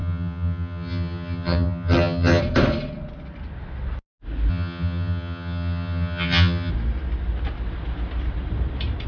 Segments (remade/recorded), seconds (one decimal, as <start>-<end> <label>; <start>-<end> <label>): 0.0-2.4 remade; 2.4-4.5 recorded; 4.5-6.7 remade; 6.7-9.1 recorded